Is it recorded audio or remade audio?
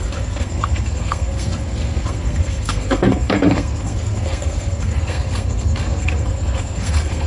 remade